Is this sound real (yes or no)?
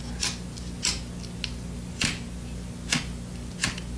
yes